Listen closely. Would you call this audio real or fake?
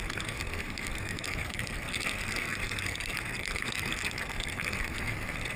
fake